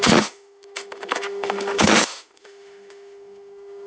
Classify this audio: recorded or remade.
remade